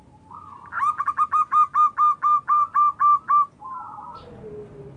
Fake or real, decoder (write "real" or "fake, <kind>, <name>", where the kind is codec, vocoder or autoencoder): real